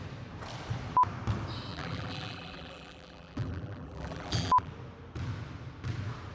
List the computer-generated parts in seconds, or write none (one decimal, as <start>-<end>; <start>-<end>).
1.7-4.7